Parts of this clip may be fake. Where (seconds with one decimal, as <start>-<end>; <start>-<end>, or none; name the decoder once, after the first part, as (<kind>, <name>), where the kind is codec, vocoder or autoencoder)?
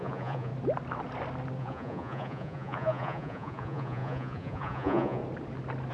0.0-0.5 (vocoder, Vocos); 1.6-5.2